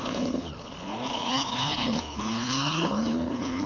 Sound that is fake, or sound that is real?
fake